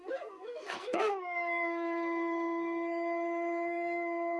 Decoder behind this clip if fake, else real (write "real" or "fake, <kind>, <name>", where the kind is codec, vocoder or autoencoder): fake, codec, SNAC